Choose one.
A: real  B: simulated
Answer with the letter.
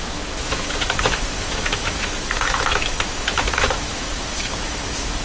B